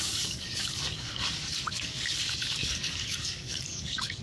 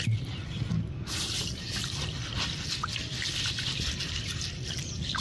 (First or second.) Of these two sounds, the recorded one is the second